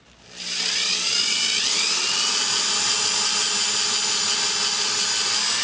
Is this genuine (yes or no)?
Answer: yes